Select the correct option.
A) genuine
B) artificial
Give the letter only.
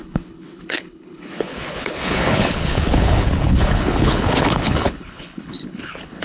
B